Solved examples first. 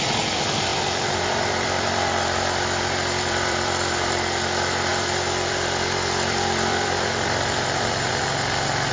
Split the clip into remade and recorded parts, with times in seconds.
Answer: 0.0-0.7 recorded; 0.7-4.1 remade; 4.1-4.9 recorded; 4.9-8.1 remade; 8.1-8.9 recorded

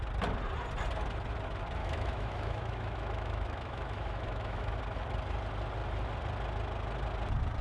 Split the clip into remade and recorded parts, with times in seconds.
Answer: 0.0-1.8 recorded; 1.8-4.7 remade; 4.7-7.6 recorded

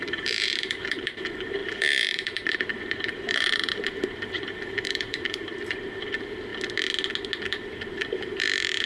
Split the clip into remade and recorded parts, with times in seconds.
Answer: 0.0-6.5 remade; 6.5-7.4 recorded; 7.4-8.9 remade

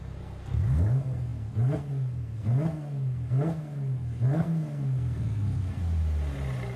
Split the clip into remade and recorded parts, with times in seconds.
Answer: 0.0-5.8 remade; 5.8-6.8 recorded

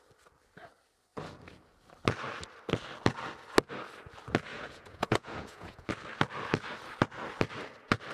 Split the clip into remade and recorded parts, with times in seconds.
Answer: 0.0-4.5 recorded; 4.5-5.9 remade; 5.9-8.1 recorded